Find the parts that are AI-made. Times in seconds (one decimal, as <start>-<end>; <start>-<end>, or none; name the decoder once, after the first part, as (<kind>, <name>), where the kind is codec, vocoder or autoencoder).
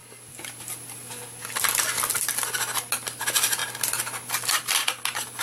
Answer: none